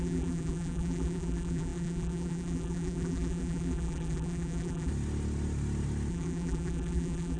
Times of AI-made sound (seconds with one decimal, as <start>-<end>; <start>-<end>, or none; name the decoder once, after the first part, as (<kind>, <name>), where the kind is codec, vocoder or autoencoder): 0.0-4.9 (vocoder, BigVGAN v2); 6.1-7.4